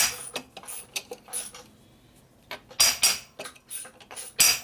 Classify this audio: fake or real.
real